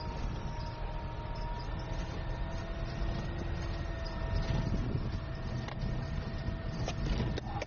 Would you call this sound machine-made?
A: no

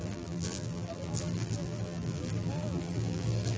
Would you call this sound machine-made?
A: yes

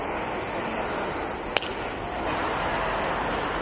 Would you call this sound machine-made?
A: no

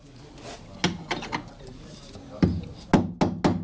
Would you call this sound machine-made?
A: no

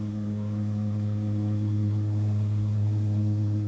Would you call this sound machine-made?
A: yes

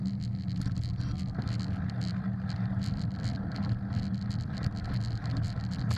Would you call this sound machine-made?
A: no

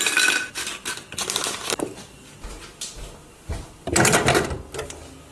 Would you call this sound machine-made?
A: no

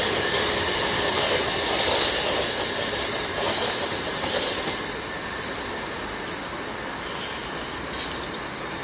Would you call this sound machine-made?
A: no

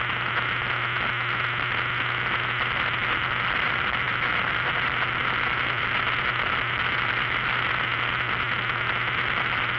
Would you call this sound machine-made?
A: no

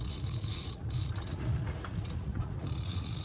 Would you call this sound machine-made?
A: yes